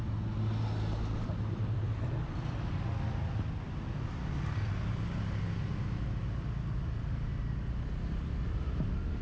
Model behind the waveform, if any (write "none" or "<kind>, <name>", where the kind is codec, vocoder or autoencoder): none